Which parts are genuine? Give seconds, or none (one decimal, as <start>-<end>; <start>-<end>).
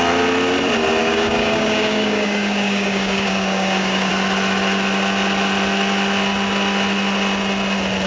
0.0-1.0; 4.1-8.1